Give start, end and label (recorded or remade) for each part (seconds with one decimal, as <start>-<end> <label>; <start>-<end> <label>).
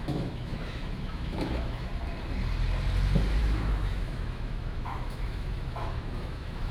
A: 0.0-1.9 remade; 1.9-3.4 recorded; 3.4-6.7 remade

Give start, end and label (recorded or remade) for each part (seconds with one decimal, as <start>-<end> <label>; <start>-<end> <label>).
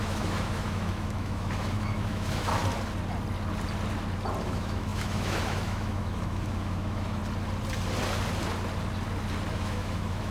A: 0.0-2.6 remade; 2.6-4.4 recorded; 4.4-7.2 remade; 7.2-9.5 recorded; 9.5-10.3 remade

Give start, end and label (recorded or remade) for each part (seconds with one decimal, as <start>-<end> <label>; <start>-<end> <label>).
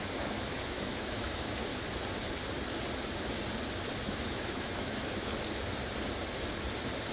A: 0.0-1.7 remade; 1.7-4.0 recorded; 4.0-5.3 remade; 5.3-7.1 recorded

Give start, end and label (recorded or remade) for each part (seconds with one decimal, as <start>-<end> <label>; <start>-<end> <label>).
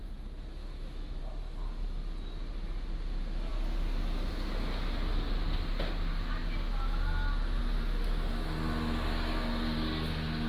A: 0.0-0.6 recorded; 0.6-1.2 remade; 1.2-10.5 recorded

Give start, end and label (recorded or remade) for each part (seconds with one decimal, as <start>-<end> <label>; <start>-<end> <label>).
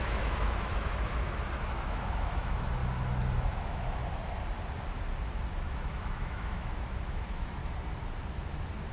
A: 0.0-2.8 remade; 2.8-3.4 recorded; 3.4-4.0 remade; 4.0-5.7 recorded; 5.7-7.6 remade; 7.6-8.9 recorded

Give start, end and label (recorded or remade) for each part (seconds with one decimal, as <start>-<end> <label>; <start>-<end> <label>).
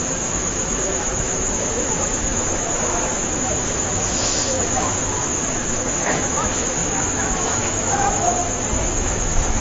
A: 0.0-8.4 remade; 8.4-8.9 recorded; 8.9-9.6 remade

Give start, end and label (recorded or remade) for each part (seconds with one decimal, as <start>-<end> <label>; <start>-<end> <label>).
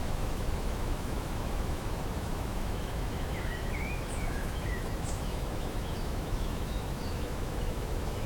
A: 0.0-8.3 remade